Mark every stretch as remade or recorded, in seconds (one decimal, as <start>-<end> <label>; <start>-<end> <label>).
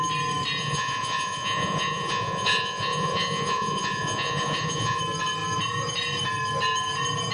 0.0-0.6 recorded; 0.6-5.0 remade; 5.0-7.3 recorded